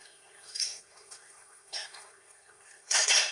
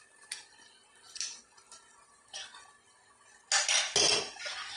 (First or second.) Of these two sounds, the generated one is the first